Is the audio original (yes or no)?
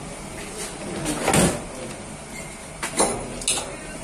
yes